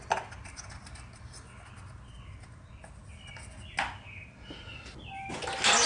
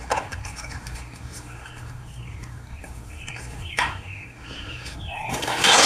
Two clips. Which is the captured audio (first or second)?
first